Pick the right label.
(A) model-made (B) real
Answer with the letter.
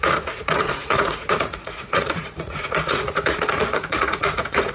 A